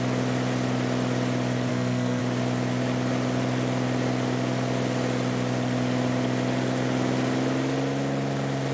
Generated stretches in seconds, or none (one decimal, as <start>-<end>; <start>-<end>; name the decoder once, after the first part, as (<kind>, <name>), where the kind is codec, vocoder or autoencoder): 1.7-2.2 (codec, SNAC)